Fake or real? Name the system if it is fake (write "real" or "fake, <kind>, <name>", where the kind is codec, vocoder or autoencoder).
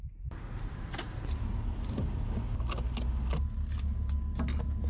real